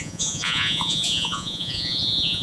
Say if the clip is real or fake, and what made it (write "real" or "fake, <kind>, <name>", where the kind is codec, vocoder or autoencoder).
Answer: fake, vocoder, Vocos